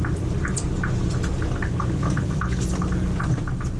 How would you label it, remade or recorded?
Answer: recorded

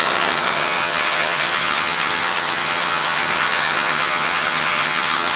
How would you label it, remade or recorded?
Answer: remade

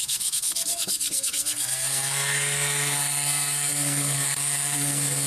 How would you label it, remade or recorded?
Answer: remade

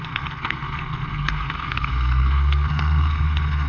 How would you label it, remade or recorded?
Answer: remade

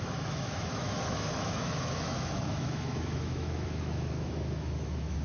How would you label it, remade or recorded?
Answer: remade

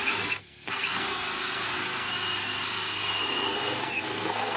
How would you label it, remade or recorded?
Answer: remade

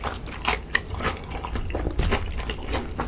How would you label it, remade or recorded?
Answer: recorded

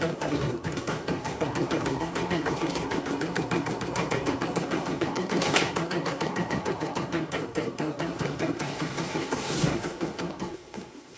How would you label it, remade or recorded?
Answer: remade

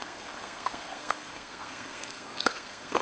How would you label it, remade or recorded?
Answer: remade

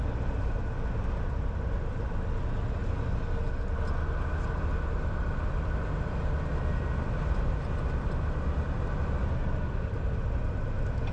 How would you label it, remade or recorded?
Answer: recorded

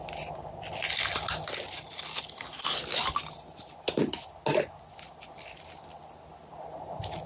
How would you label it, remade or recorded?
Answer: recorded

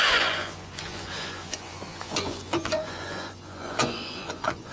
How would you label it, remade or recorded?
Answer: remade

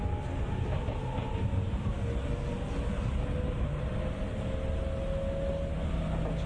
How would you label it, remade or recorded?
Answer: recorded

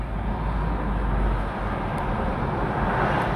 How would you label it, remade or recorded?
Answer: recorded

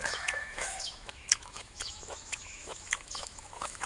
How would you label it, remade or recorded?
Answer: remade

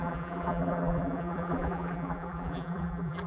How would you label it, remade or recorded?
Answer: remade